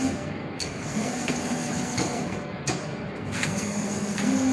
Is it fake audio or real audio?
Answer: fake